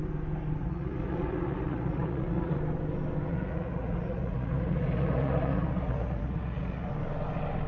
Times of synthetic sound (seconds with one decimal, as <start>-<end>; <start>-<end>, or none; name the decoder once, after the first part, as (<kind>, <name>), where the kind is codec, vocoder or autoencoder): 0.6-2.6 (vocoder, Vocos); 3.3-6.9